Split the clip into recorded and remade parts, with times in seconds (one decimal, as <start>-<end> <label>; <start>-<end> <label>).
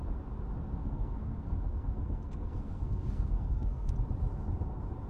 0.0-0.8 recorded; 0.8-3.9 remade; 3.9-5.1 recorded